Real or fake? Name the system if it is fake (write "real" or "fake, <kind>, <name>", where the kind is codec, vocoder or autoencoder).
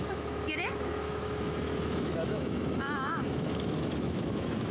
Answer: fake, autoencoder, DAC-VAE